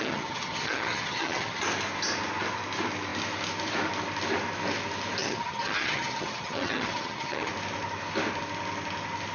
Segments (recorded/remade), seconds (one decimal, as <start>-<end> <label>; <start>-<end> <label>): 0.0-1.6 remade; 1.6-5.2 recorded; 5.2-7.5 remade; 7.5-9.3 recorded